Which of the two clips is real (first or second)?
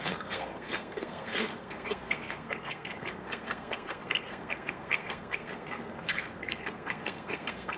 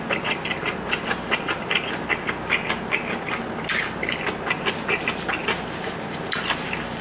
second